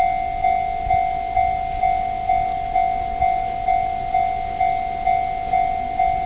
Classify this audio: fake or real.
real